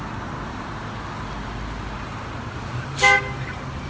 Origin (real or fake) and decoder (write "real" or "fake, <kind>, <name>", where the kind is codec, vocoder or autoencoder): real